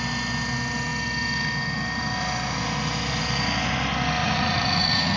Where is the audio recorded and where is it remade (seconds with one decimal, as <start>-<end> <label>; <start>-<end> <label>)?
0.0-4.2 recorded; 4.2-5.2 remade

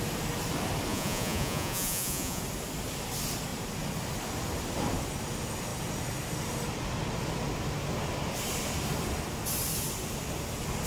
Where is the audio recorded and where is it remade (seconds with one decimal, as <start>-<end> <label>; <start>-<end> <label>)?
0.0-0.9 recorded; 0.9-2.4 remade; 2.4-10.9 recorded